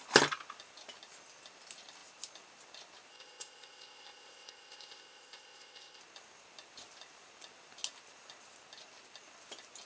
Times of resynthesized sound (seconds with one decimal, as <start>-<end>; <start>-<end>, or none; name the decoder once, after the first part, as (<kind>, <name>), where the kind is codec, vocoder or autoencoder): 3.1-6.0 (codec, ZipCodec)